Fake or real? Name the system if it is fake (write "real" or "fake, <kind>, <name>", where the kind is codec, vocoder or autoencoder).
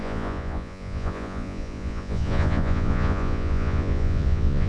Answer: fake, vocoder, Vocos